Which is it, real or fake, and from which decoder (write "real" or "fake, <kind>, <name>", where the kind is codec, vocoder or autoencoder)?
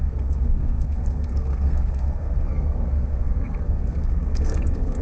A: fake, codec, SNAC